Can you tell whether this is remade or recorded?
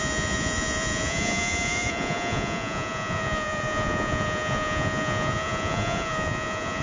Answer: remade